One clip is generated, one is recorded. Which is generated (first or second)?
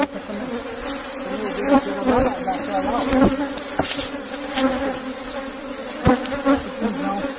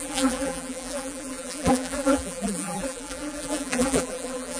second